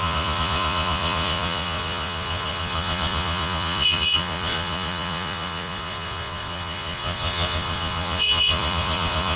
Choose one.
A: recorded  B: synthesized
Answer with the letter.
B